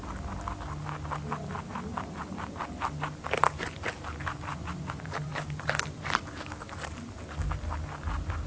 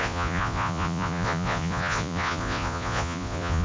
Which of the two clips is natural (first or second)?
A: first